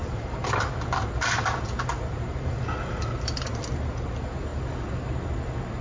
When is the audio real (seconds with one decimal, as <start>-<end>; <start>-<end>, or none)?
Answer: 0.0-5.8